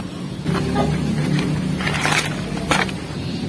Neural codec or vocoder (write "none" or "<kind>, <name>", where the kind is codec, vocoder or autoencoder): none